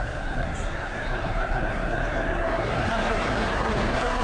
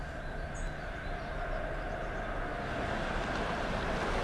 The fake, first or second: first